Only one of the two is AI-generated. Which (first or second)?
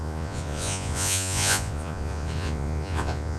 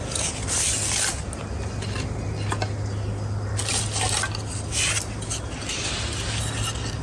first